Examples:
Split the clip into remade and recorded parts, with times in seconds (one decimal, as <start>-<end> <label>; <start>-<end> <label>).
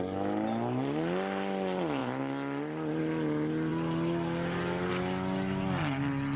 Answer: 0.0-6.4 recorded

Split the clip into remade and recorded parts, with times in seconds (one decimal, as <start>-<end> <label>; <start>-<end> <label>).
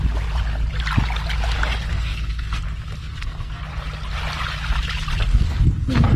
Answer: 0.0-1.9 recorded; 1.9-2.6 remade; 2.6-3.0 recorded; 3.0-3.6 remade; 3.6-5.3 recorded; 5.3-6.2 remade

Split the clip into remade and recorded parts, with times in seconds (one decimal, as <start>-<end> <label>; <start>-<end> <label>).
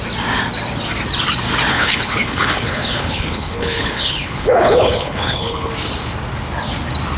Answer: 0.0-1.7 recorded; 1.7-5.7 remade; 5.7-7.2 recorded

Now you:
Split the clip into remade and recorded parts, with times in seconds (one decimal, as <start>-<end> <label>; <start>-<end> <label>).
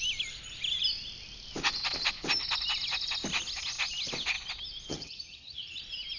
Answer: 0.0-4.9 recorded; 4.9-5.8 remade; 5.8-6.2 recorded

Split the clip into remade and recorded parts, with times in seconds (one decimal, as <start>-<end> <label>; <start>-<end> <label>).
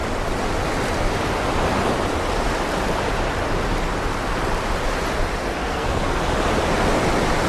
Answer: 0.0-5.6 recorded; 5.6-6.2 remade; 6.2-7.5 recorded